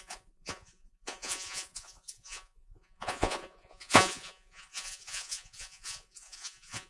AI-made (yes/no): yes